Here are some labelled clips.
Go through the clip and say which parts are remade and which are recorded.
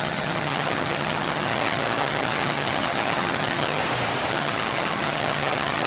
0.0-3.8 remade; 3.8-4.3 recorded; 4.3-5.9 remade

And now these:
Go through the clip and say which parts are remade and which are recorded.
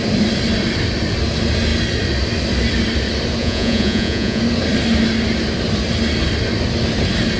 0.0-3.4 recorded; 3.4-4.4 remade; 4.4-7.4 recorded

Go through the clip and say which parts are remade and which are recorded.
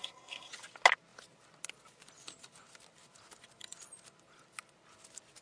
0.0-0.5 remade; 0.5-5.4 recorded